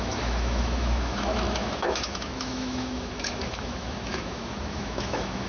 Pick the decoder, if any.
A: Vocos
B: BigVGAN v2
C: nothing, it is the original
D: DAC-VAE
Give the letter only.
D